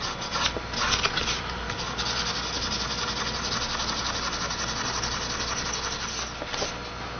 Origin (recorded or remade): recorded